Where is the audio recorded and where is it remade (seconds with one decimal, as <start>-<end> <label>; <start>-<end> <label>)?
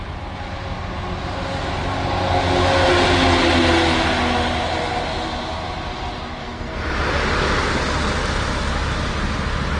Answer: 0.0-6.4 recorded; 6.4-6.9 remade; 6.9-9.8 recorded